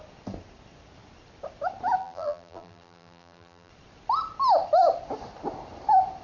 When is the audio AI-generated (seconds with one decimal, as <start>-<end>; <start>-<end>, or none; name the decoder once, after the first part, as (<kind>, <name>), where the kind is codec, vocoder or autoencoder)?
2.0-3.7 (vocoder, BigVGAN v2)